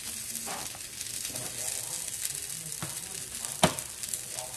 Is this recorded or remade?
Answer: recorded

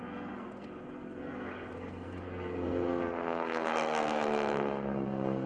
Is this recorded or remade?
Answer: remade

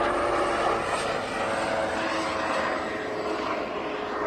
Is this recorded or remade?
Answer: recorded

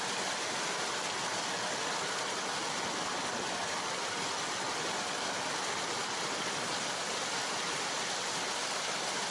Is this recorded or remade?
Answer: recorded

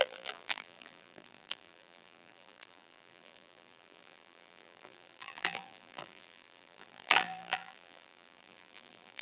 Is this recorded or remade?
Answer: remade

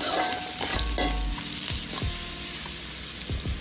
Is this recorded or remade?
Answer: recorded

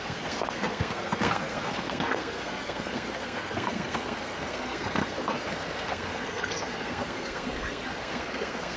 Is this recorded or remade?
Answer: remade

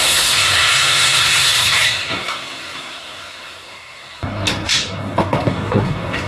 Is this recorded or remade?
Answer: remade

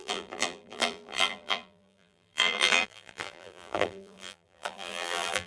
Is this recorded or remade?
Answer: remade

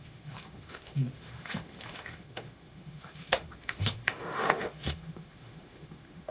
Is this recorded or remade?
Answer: remade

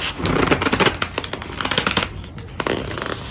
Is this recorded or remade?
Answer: recorded